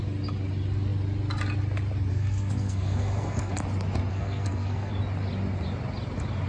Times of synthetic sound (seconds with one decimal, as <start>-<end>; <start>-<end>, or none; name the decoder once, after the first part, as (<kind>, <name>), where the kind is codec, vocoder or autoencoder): 2.1-3.5 (codec, SNAC); 4.1-4.9